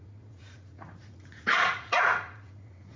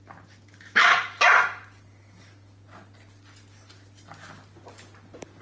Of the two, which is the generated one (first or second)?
first